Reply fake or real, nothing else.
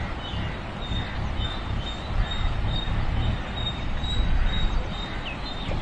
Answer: real